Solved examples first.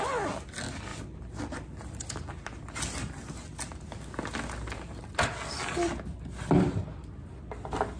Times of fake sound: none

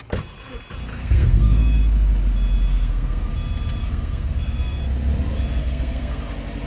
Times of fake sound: 0.9-1.8; 2.7-3.3; 3.8-4.8; 5.6-6.2

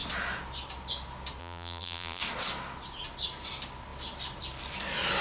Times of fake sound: 1.4-2.2

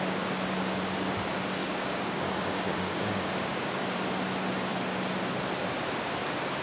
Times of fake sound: 1.6-3.7